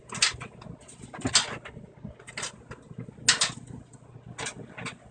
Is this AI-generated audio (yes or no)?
no